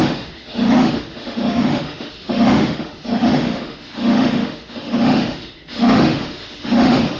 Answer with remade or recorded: remade